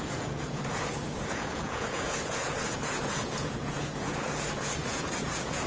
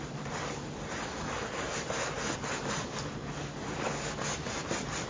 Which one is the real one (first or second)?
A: second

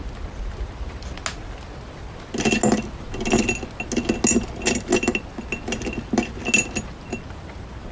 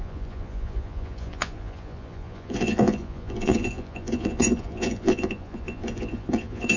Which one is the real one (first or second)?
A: first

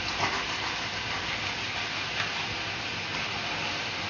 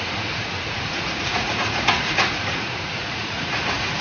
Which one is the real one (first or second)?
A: first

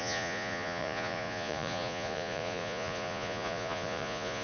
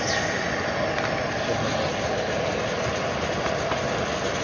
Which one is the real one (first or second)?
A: second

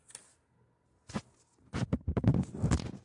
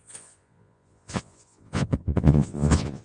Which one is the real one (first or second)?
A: first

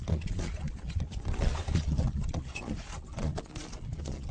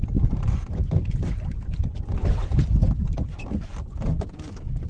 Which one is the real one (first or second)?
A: second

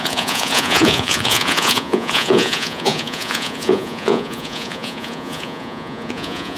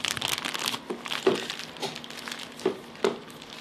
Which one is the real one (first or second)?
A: second